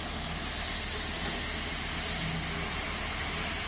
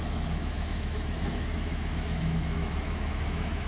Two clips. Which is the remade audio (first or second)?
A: second